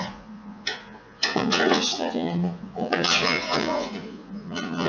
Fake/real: fake